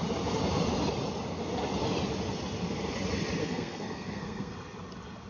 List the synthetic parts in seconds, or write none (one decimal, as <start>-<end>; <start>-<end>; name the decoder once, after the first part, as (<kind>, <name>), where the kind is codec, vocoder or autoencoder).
3.4-4.5 (codec, SNAC)